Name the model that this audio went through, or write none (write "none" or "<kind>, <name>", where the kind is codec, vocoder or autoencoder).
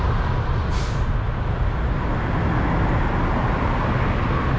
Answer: none